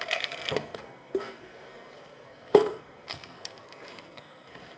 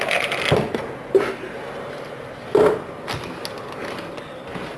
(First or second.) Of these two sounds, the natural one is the second